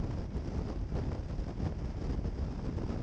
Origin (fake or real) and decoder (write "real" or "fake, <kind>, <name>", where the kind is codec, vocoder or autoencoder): real